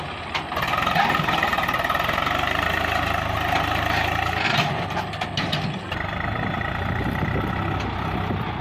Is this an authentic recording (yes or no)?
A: yes